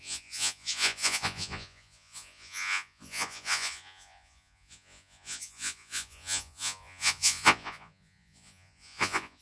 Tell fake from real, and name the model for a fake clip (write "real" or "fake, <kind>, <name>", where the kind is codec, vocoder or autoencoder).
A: fake, vocoder, Vocos